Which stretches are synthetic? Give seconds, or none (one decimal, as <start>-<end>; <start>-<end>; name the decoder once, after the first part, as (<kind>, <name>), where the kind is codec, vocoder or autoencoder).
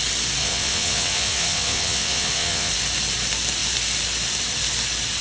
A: 0.4-2.7 (vocoder, WaveNeXt)